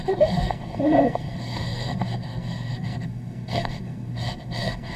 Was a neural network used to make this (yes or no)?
yes